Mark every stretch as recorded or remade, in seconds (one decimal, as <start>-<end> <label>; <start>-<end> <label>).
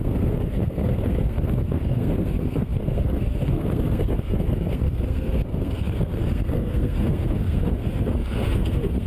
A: 0.0-9.1 remade